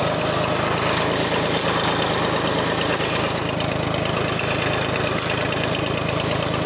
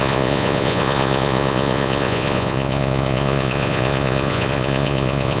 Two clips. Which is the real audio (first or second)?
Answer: first